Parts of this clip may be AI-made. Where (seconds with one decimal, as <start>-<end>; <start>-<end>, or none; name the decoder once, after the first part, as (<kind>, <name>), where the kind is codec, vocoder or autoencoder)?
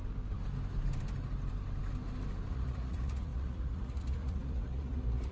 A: 2.5-5.3 (vocoder, Vocos)